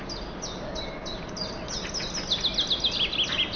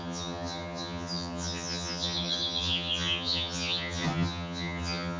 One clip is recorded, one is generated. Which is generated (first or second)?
second